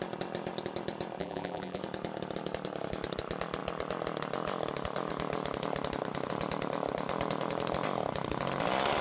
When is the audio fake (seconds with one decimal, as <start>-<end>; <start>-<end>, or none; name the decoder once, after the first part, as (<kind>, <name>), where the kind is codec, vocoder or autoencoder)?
1.2-1.8 (vocoder, BigVGAN v2)